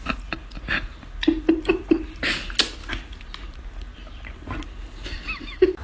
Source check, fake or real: real